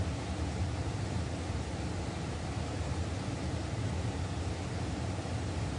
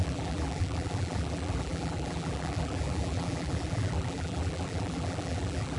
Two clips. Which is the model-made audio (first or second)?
second